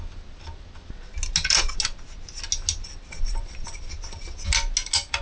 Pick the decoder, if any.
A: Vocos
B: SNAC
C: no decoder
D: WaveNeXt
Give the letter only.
C